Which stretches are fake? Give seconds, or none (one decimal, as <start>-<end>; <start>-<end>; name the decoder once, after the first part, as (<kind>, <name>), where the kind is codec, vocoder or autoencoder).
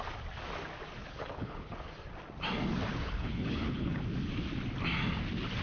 1.0-1.9 (codec, HILCodec); 2.9-4.0